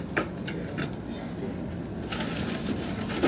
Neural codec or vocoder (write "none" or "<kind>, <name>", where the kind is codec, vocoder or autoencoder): none